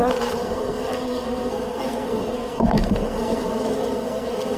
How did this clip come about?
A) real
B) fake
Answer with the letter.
B